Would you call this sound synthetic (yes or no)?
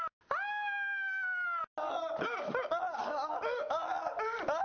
no